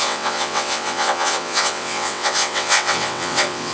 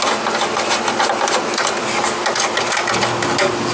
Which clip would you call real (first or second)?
second